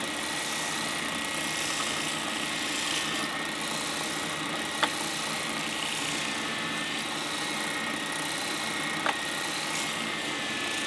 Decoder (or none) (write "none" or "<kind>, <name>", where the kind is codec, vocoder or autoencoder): none